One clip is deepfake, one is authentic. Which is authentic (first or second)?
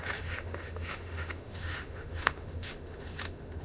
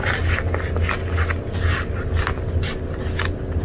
second